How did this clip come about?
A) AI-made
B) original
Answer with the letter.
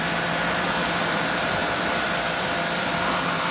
A